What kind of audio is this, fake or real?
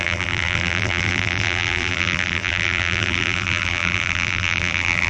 fake